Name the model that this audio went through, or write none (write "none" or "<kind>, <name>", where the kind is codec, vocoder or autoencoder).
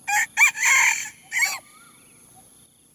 none